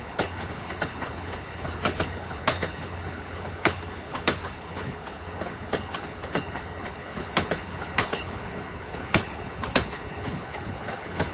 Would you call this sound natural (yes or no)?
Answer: no